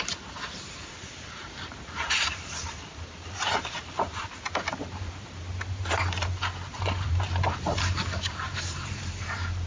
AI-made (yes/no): yes